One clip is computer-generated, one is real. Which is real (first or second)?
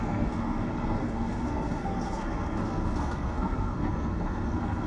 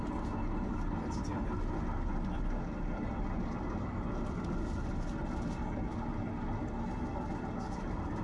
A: second